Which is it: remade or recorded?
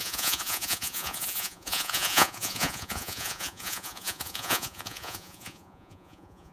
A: remade